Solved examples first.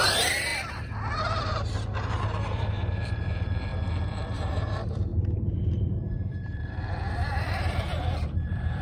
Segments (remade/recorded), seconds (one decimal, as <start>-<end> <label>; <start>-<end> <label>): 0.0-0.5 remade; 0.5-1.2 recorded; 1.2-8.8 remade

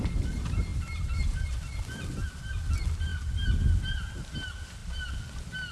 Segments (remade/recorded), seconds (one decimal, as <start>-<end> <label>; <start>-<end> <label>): 0.0-5.7 recorded

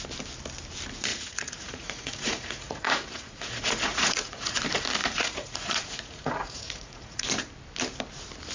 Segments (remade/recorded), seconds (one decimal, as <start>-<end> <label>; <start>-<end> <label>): 0.0-1.1 recorded; 1.1-4.6 remade; 4.6-5.0 recorded; 5.0-7.3 remade; 7.3-8.5 recorded

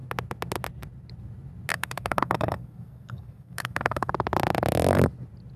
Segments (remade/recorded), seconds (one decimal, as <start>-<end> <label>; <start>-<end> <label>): 0.0-1.7 recorded; 1.7-4.1 remade; 4.1-5.6 recorded

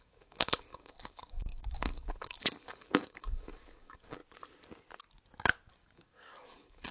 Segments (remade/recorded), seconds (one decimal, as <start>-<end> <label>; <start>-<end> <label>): 0.0-4.2 remade; 4.2-5.7 recorded; 5.7-6.9 remade

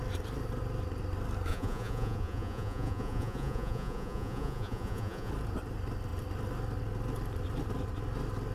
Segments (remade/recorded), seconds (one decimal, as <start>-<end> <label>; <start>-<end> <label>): 0.0-1.5 recorded; 1.5-5.3 remade; 5.3-8.5 recorded

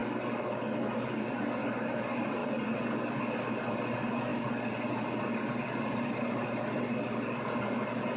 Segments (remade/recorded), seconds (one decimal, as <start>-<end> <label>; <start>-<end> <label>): 0.0-8.2 recorded

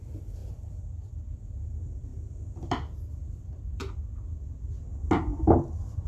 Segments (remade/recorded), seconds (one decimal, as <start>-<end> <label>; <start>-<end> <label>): 0.0-3.8 remade; 3.8-5.2 recorded; 5.2-6.1 remade